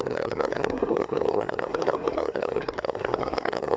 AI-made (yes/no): yes